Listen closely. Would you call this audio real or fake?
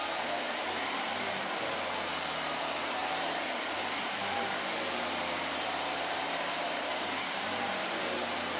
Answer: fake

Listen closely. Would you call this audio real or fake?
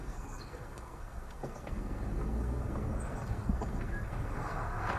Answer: fake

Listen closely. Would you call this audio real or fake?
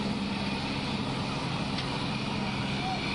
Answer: real